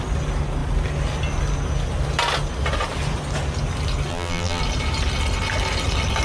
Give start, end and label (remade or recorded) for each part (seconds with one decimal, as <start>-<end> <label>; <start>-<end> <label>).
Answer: 0.0-4.1 recorded; 4.1-4.6 remade; 4.6-6.2 recorded